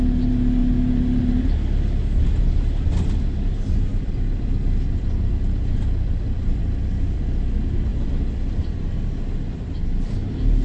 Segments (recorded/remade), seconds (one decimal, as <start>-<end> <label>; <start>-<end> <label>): 0.0-3.9 recorded; 3.9-7.2 remade; 7.2-10.6 recorded